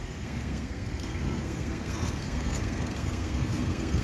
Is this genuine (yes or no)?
no